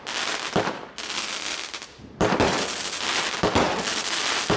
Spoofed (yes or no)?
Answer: no